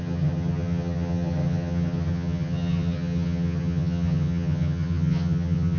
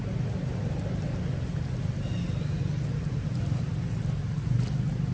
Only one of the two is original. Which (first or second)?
second